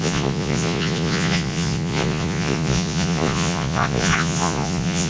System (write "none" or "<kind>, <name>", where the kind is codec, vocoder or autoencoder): vocoder, Vocos